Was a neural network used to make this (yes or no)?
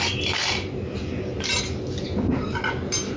no